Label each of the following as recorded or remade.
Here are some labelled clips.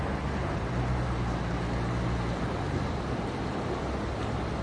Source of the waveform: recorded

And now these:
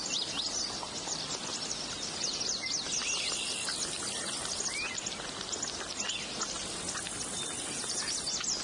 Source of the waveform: recorded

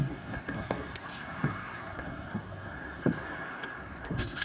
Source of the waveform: remade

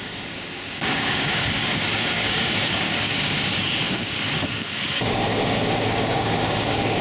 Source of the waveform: remade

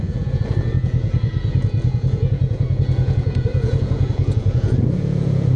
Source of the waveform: remade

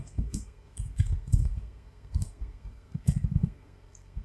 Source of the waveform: remade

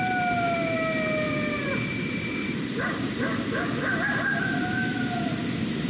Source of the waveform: recorded